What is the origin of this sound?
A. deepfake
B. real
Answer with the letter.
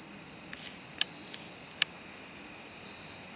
B